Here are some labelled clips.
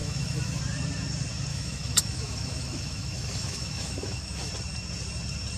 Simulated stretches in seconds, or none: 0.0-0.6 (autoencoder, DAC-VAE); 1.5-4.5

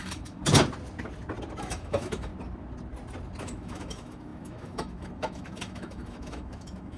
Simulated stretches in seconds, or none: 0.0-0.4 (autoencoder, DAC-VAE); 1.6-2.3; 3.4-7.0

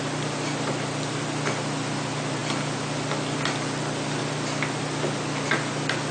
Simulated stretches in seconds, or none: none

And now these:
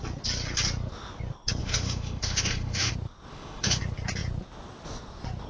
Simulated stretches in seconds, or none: 1.6-2.9 (autoencoder, DAC-VAE); 3.3-3.8

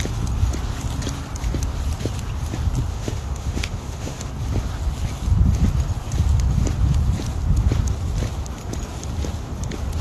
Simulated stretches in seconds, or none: 2.9-4.3 (autoencoder, DAC-VAE)

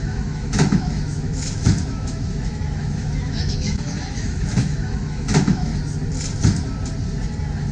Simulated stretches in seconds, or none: 0.0-5.7 (autoencoder, DAC-VAE)

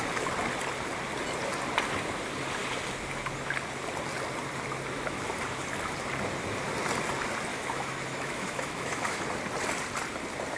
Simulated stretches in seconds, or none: 7.5-9.2 (autoencoder, DAC-VAE)

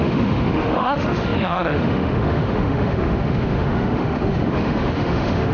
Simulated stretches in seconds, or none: 0.0-5.5 (autoencoder, DAC-VAE)